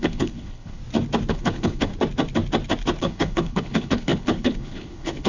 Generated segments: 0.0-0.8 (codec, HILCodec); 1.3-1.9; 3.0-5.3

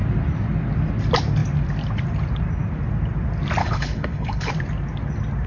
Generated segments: 3.6-4.5 (codec, HILCodec)

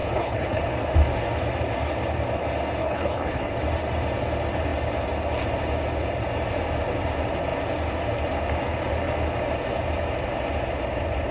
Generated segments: 0.0-0.6 (codec, HILCodec); 2.8-3.5

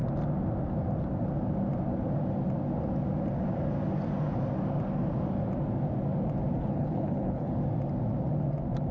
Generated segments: 6.6-7.5 (codec, HILCodec)

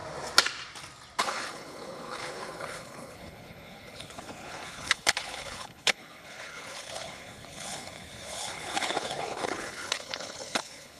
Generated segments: 1.2-11.0 (codec, HILCodec)